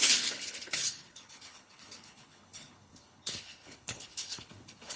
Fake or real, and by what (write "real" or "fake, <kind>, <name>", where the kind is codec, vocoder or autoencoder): fake, codec, HILCodec